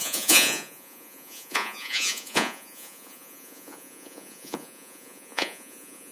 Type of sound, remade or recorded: remade